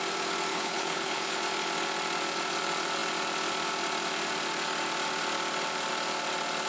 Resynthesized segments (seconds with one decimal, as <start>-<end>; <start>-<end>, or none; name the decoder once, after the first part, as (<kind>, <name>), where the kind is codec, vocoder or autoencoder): 0.5-1.4 (codec, HILCodec)